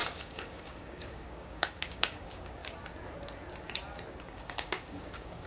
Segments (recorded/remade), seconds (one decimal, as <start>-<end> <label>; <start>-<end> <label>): 0.0-2.6 remade; 2.6-4.2 recorded; 4.2-5.5 remade